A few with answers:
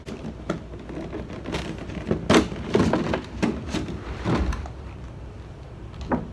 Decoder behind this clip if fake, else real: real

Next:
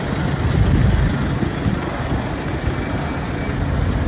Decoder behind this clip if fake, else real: real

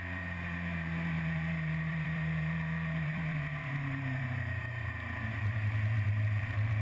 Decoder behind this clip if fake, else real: fake, vocoder, BigVGAN v2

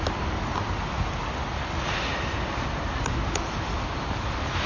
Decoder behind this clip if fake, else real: real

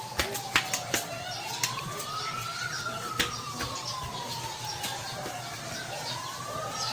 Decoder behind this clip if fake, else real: real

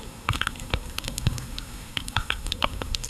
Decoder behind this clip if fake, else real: fake, codec, SNAC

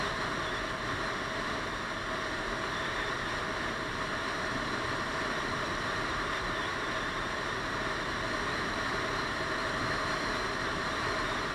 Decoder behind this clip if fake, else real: real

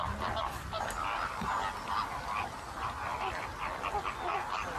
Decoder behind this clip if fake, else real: real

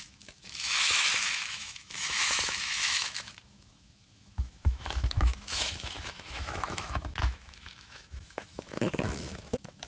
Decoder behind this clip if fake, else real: fake, autoencoder, DAC-VAE